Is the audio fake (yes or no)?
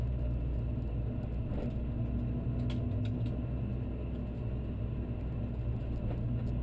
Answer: no